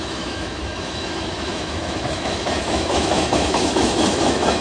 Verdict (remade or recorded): remade